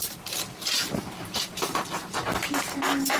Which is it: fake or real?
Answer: fake